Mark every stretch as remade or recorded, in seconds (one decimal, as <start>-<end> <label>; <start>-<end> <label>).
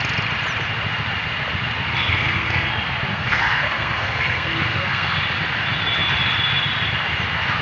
0.0-2.0 recorded; 2.0-2.7 remade; 2.7-3.1 recorded; 3.1-5.2 remade; 5.2-7.6 recorded